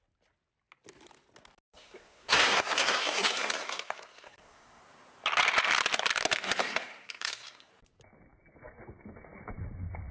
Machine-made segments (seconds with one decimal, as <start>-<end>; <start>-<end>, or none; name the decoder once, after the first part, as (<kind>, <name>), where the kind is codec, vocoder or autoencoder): 1.7-4.8 (codec, SNAC); 6.6-7.7